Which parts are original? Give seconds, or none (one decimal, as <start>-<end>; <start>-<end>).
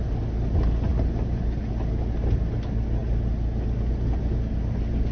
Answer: 0.0-0.9; 1.7-5.1